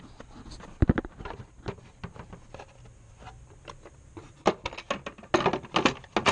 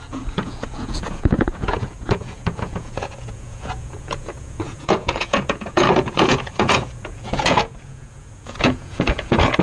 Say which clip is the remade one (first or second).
second